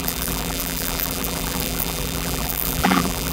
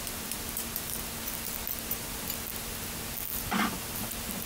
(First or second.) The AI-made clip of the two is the first